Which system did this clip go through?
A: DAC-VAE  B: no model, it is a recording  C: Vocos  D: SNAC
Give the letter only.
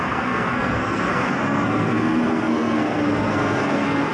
D